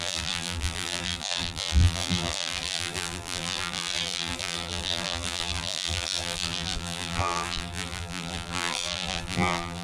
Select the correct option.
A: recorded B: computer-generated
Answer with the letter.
B